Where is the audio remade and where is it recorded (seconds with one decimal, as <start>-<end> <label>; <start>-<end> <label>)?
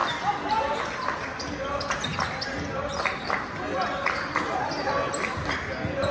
0.0-6.1 recorded